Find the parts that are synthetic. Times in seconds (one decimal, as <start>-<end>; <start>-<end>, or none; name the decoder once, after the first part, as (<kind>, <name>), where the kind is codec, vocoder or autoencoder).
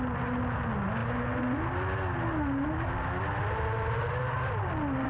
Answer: none